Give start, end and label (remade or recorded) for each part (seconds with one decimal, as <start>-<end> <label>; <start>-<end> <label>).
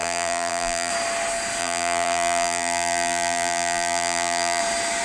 0.0-0.9 remade; 0.9-1.6 recorded; 1.6-4.6 remade; 4.6-5.0 recorded